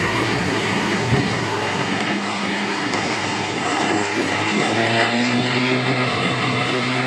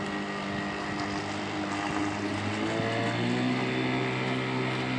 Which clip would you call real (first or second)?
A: second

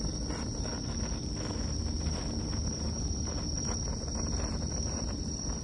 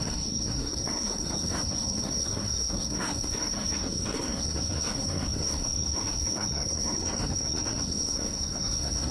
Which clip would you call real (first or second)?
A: first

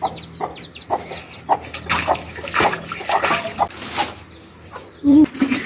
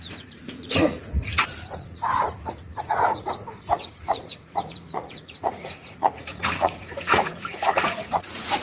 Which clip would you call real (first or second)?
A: first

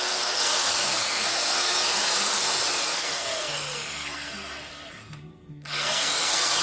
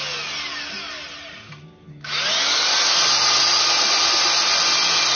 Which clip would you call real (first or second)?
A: second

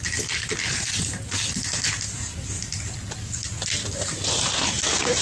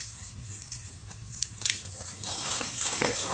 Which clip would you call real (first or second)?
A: first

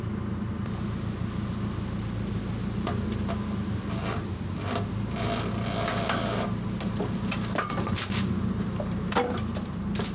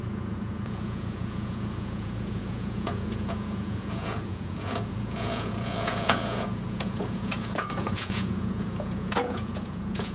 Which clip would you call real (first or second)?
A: first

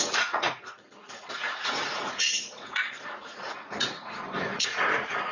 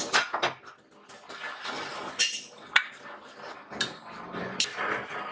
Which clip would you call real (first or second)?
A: second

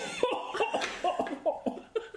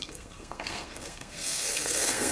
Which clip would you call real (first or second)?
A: first